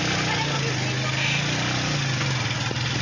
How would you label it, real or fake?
real